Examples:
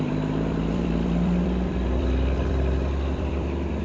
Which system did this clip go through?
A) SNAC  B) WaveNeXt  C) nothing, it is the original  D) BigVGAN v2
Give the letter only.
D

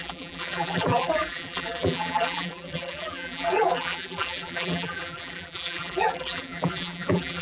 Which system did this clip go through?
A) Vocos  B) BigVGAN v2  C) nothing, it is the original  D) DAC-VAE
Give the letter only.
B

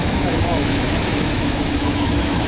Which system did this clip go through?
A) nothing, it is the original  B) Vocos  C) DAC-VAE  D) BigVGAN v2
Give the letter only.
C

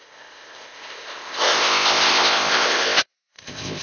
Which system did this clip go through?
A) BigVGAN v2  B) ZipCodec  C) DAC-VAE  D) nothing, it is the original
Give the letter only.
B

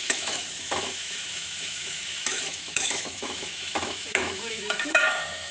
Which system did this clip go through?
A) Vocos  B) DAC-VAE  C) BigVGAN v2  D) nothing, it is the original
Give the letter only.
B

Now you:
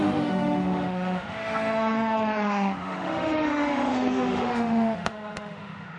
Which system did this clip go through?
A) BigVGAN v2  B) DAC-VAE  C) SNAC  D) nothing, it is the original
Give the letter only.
B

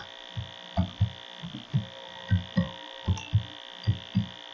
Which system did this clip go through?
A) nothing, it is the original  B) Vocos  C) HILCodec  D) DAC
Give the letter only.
A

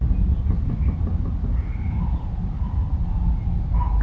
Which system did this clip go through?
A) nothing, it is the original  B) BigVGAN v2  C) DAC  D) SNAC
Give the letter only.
A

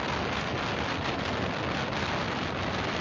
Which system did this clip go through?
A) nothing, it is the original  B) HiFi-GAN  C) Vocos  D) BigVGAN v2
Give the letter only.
A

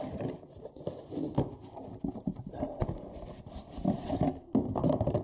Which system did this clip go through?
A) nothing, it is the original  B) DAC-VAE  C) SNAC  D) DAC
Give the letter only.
A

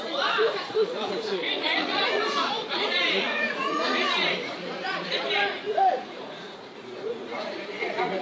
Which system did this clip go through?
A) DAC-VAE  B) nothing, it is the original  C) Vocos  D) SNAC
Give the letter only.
C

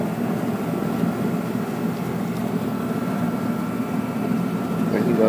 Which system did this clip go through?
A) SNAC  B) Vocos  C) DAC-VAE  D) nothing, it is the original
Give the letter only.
D